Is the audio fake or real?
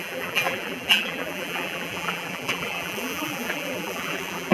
fake